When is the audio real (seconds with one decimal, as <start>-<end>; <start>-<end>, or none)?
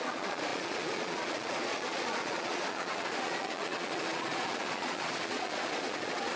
none